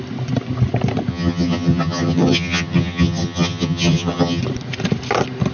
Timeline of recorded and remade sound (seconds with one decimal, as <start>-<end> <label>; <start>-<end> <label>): 0.0-1.1 recorded; 1.1-4.4 remade; 4.4-5.5 recorded